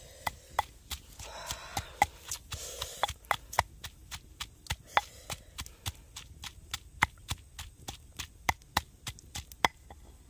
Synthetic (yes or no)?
no